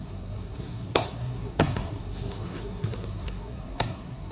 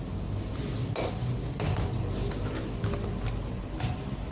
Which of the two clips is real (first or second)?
second